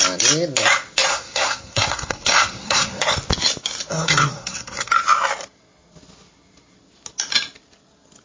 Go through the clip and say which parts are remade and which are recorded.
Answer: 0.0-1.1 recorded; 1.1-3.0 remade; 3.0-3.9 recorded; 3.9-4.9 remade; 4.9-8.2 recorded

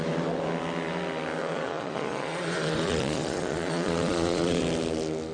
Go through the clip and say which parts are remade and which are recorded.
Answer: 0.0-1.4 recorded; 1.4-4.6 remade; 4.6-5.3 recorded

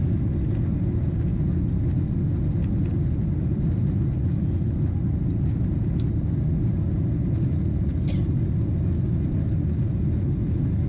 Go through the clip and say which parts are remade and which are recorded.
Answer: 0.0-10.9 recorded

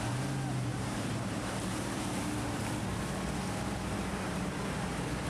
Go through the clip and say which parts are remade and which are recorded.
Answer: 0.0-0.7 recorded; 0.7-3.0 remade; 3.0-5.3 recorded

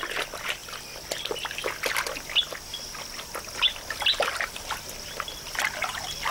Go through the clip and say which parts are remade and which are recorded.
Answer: 0.0-0.6 remade; 0.6-4.2 recorded; 4.2-6.3 remade

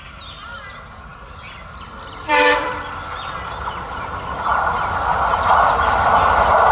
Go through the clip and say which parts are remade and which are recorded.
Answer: 0.0-1.1 recorded; 1.1-2.7 remade; 2.7-6.7 recorded